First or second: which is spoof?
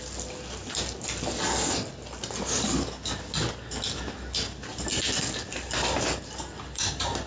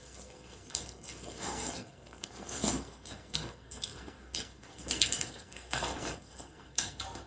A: second